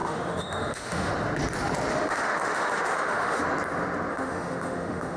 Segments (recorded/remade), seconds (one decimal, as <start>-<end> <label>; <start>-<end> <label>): 0.0-1.1 remade; 1.1-1.9 recorded; 1.9-3.4 remade; 3.4-4.1 recorded; 4.1-5.2 remade